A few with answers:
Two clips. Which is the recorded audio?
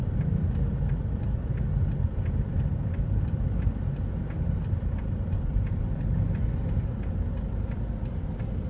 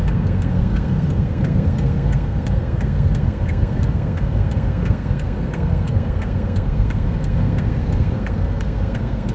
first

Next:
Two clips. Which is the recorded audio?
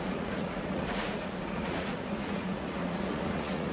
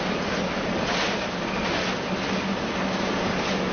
second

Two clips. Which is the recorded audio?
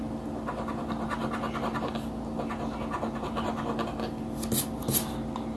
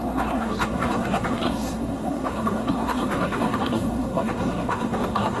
first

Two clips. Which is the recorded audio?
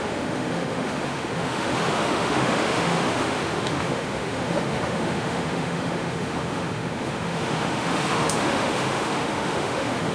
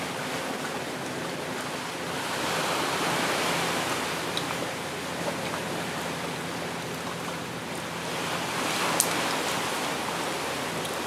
second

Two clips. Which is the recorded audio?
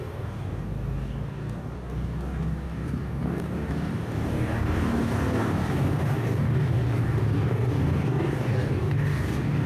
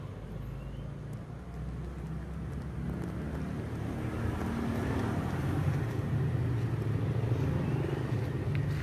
second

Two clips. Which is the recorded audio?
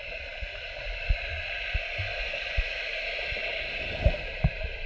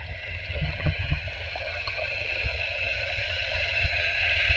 first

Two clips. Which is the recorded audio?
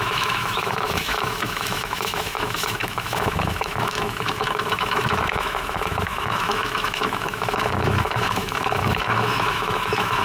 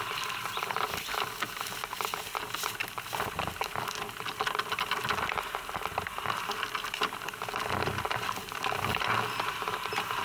second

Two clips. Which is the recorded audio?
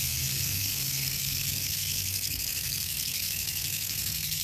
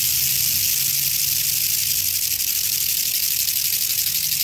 second